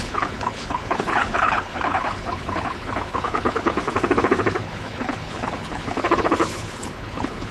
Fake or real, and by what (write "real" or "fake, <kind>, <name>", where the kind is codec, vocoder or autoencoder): fake, codec, HILCodec